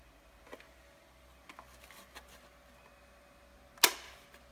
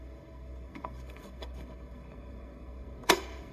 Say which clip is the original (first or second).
first